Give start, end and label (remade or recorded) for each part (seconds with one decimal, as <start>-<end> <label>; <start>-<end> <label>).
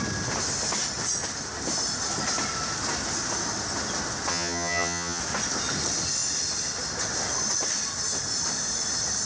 0.0-4.3 recorded; 4.3-5.2 remade; 5.2-9.3 recorded